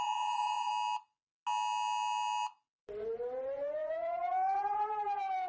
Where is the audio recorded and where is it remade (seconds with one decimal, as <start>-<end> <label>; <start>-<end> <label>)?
0.0-0.7 remade; 0.7-3.0 recorded; 3.0-5.5 remade